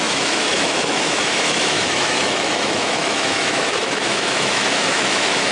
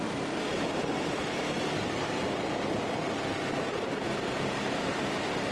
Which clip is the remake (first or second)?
first